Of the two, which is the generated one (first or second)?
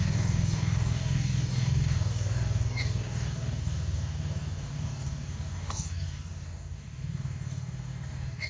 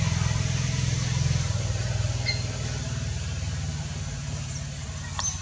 first